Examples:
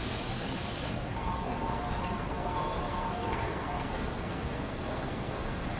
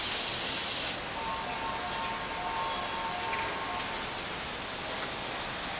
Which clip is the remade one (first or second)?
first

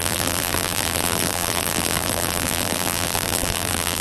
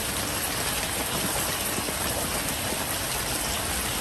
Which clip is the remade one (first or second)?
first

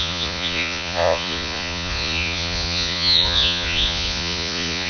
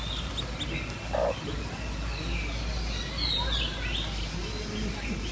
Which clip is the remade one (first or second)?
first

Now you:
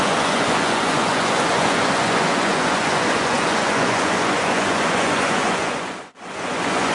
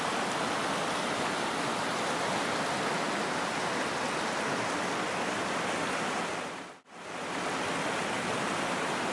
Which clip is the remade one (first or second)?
first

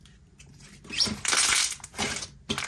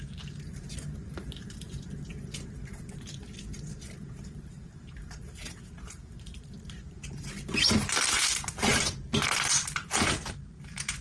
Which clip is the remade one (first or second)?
second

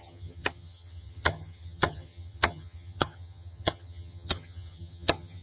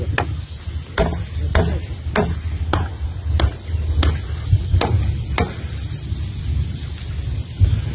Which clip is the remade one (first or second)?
first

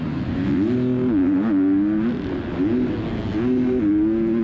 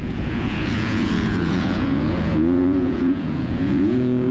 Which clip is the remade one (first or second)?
second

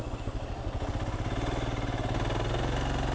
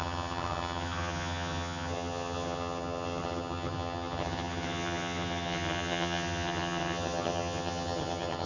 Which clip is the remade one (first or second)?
second